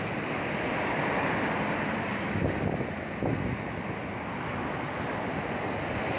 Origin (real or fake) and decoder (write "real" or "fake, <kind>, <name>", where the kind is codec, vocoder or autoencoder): real